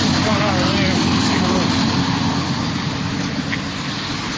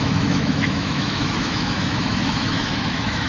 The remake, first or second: second